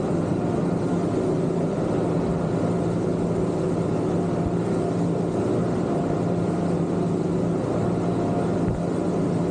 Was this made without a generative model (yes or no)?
yes